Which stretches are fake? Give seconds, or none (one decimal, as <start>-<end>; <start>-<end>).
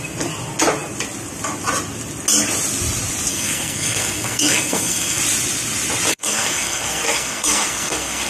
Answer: 3.3-5.2; 6.1-8.3